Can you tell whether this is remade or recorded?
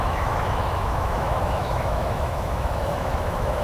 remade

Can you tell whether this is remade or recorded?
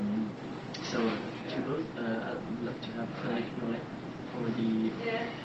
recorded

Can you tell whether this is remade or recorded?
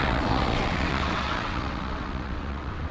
remade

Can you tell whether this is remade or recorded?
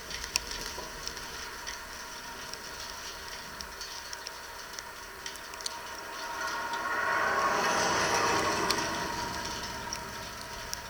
recorded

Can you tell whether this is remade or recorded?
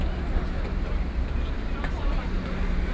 recorded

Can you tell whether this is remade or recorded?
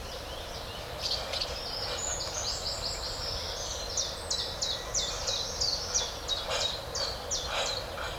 recorded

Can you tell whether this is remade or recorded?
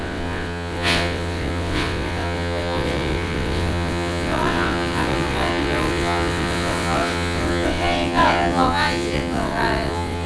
remade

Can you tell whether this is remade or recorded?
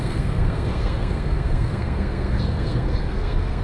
remade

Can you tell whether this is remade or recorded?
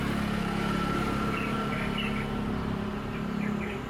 recorded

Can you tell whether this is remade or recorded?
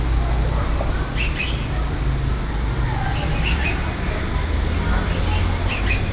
recorded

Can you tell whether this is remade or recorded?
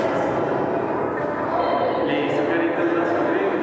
recorded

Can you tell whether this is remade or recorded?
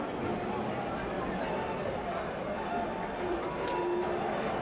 recorded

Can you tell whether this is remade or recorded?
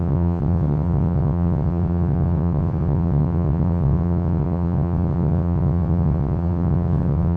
remade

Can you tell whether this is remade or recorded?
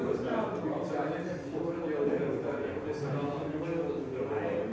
recorded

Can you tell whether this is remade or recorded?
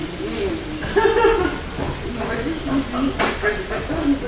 recorded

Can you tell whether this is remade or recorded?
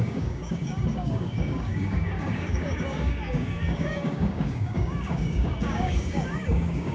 remade